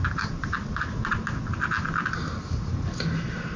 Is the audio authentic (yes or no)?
yes